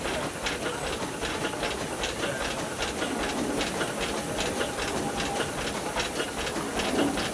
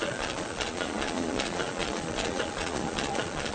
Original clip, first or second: first